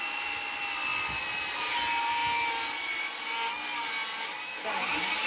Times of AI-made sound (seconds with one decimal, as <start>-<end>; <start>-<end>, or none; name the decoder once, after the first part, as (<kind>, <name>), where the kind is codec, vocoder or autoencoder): none